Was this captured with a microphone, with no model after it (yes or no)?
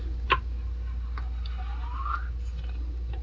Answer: yes